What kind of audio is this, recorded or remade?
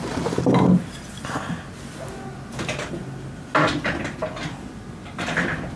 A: recorded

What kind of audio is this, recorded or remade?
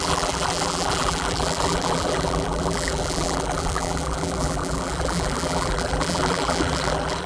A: remade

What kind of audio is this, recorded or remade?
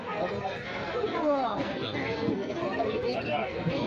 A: remade